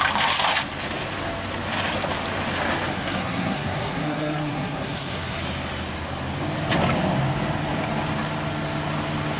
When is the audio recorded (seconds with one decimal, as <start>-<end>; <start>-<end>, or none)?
0.0-2.9; 5.4-9.4